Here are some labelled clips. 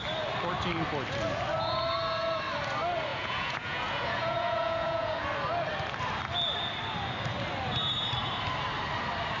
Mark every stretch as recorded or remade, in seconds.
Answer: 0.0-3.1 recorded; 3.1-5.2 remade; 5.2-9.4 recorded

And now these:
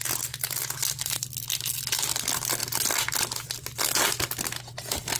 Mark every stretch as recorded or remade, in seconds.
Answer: 0.0-5.2 recorded

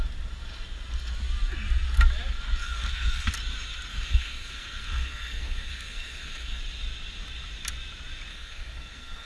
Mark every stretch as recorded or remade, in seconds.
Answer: 0.0-2.6 recorded; 2.6-3.3 remade; 3.3-3.9 recorded; 3.9-6.6 remade; 6.6-8.3 recorded; 8.3-9.3 remade

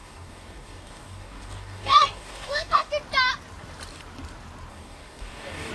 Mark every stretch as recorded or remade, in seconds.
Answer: 0.0-2.9 remade; 2.9-4.7 recorded; 4.7-5.7 remade

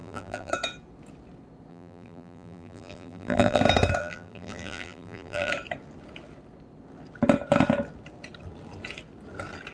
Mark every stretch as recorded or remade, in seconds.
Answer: 0.0-0.5 remade; 0.5-1.7 recorded; 1.7-3.6 remade; 3.6-4.0 recorded; 4.0-5.5 remade; 5.5-9.7 recorded

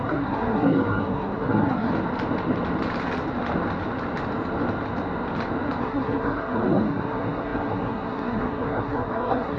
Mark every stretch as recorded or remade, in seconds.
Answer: 0.0-1.9 remade; 1.9-5.8 recorded; 5.8-9.6 remade

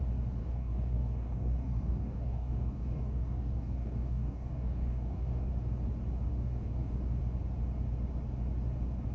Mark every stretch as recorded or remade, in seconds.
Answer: 0.0-0.4 recorded; 0.4-5.5 remade; 5.5-6.3 recorded; 6.3-7.2 remade; 7.2-9.1 recorded

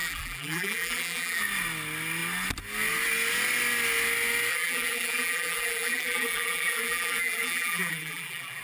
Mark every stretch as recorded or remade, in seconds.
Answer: 0.0-1.4 remade; 1.4-4.5 recorded; 4.5-8.6 remade